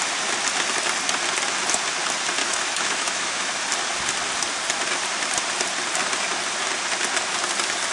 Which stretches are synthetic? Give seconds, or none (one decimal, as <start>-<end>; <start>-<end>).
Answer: 2.4-3.5